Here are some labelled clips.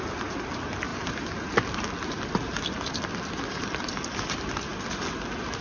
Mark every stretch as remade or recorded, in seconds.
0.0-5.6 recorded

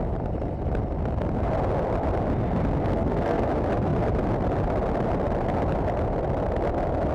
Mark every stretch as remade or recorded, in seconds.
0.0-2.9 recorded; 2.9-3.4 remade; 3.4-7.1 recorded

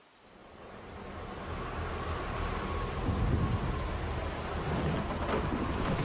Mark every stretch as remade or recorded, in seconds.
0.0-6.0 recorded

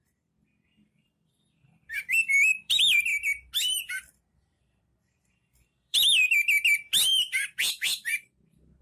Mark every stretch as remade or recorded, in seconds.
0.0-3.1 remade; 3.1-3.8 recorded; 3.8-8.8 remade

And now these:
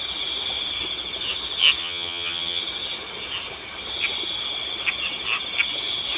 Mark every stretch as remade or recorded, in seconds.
0.0-1.8 recorded; 1.8-2.6 remade; 2.6-6.2 recorded

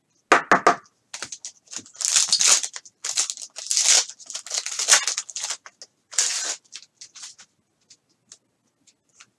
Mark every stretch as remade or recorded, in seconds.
0.0-9.4 recorded